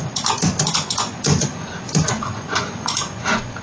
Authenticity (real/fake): fake